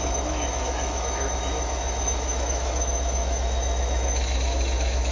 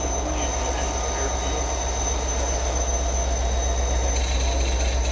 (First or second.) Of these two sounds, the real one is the second